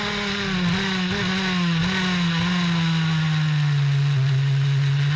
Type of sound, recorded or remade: recorded